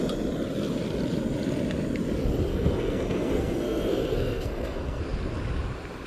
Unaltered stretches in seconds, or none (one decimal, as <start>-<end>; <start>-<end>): 0.0-2.5; 5.0-6.1